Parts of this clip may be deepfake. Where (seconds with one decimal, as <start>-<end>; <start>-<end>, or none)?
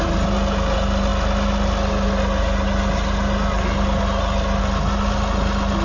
none